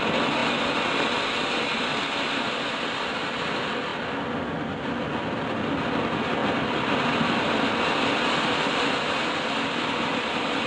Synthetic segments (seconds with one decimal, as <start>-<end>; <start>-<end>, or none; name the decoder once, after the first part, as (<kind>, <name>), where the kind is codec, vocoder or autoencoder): 3.9-4.9 (vocoder, BigVGAN v2); 6.4-7.0